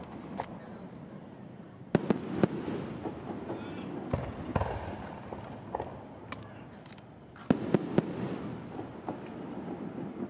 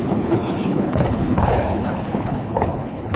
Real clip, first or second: first